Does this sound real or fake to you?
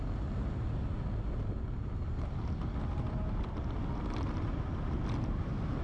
real